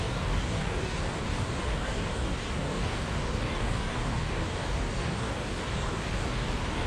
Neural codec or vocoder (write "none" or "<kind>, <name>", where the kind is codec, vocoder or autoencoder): codec, DAC